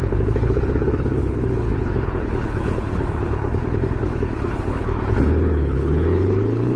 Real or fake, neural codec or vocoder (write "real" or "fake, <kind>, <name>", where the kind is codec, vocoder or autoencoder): fake, codec, HILCodec